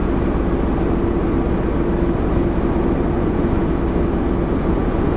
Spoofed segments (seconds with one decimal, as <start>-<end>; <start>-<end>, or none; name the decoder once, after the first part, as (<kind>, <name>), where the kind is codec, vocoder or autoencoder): 3.1-3.6 (vocoder, Vocos); 4.6-5.2